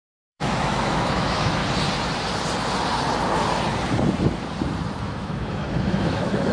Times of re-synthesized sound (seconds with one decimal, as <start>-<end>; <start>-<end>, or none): 0.0-1.6; 5.0-6.5